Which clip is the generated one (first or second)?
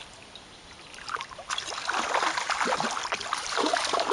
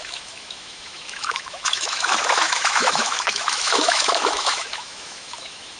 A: second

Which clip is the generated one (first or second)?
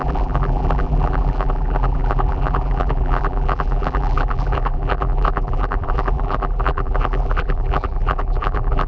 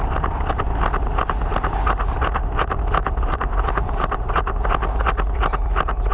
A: first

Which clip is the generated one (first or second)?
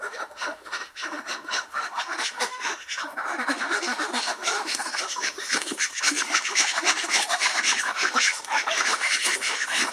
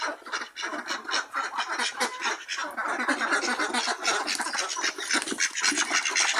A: first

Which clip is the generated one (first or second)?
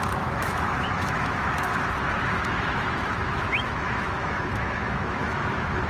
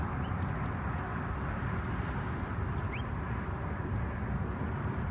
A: first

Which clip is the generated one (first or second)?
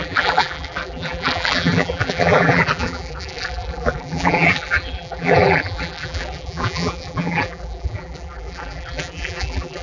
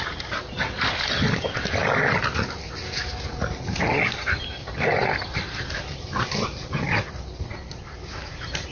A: first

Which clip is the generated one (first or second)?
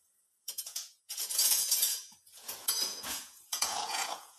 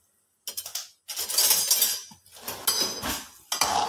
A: first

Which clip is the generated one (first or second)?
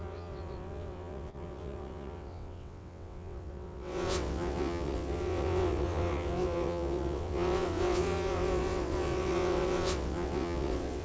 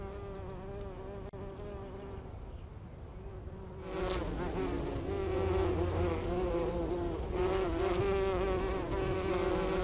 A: first